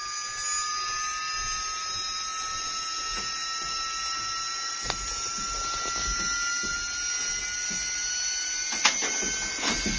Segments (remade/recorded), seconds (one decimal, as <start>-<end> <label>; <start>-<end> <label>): 0.0-10.0 recorded